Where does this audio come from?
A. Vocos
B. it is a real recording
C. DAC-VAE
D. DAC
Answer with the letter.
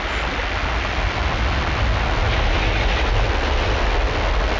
B